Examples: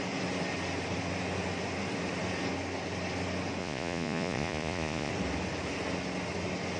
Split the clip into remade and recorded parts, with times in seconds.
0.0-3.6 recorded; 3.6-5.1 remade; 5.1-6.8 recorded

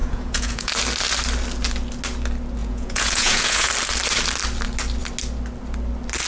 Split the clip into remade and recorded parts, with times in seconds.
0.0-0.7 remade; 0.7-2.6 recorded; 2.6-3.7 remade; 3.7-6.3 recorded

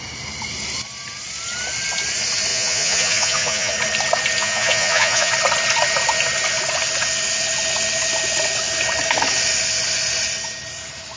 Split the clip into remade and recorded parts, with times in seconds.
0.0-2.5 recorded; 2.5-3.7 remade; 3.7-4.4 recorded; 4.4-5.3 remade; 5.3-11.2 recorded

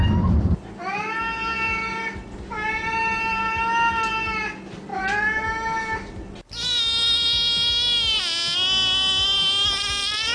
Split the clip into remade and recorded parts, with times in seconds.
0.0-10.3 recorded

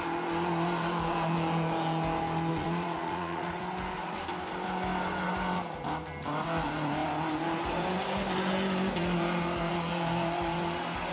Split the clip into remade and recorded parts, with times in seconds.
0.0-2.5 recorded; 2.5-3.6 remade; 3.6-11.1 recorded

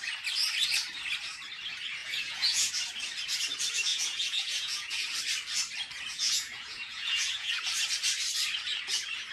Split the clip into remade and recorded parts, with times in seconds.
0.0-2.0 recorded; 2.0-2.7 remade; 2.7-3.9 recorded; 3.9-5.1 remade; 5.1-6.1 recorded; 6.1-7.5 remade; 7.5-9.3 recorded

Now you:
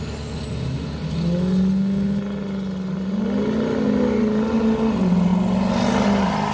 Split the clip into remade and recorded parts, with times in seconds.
0.0-6.5 recorded